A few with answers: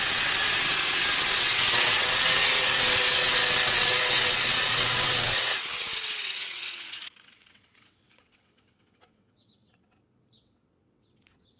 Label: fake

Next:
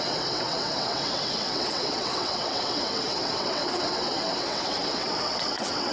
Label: fake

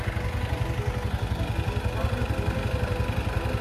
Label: real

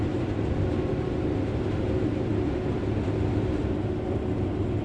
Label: real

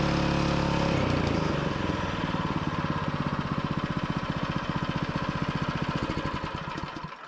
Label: real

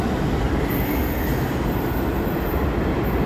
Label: real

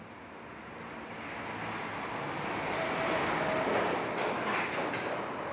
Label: real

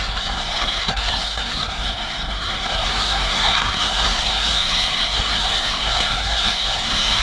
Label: fake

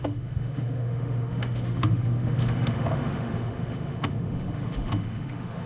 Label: fake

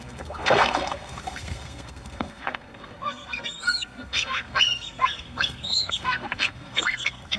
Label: fake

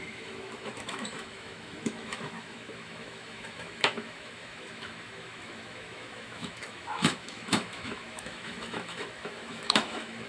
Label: fake